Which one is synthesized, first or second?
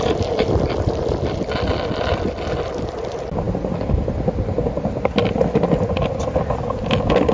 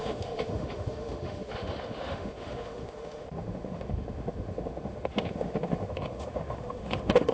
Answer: second